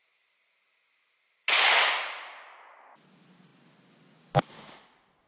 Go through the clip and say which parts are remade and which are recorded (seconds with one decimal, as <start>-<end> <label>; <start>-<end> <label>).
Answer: 0.0-5.3 recorded